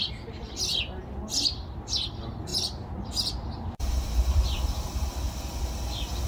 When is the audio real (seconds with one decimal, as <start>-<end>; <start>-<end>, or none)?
0.0-6.3